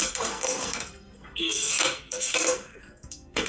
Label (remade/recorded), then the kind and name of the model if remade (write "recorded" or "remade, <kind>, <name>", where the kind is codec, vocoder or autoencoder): remade, codec, SNAC